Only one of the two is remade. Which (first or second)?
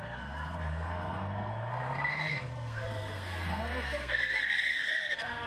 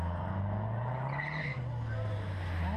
first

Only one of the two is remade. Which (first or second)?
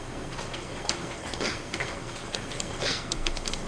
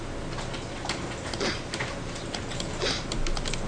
first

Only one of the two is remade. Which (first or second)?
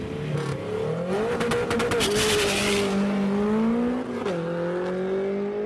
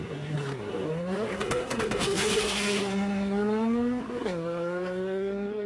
second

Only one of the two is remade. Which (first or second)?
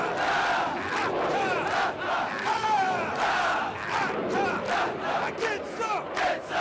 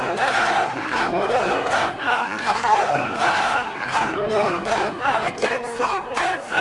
second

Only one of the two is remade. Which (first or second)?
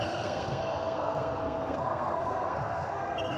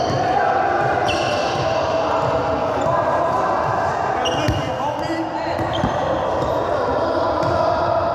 first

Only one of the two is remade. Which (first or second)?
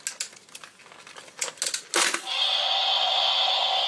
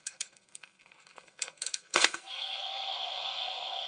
second